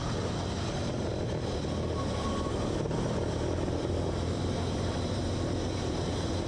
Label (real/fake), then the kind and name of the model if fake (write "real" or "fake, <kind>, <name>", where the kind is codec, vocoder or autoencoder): real